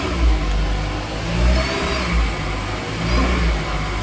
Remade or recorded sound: recorded